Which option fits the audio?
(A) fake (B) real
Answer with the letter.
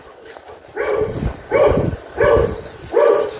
B